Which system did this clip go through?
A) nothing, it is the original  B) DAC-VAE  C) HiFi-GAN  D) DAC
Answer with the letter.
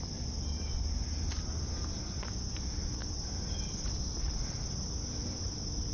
A